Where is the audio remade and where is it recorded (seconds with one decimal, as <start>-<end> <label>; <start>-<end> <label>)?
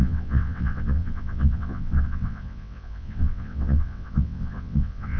0.0-5.2 remade